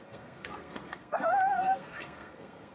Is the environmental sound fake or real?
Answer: fake